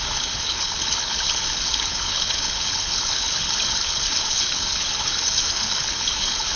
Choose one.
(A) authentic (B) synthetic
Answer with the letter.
B